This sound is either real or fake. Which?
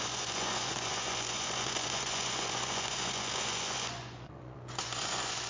fake